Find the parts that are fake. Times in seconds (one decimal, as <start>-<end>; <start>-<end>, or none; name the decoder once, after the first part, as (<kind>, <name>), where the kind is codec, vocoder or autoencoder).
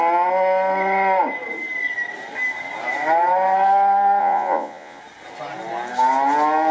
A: 4.2-5.0 (vocoder, Vocos)